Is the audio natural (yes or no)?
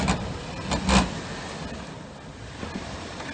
yes